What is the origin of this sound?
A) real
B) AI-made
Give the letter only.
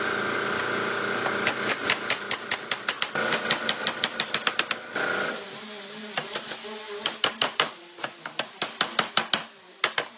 A